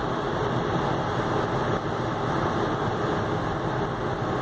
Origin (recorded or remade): recorded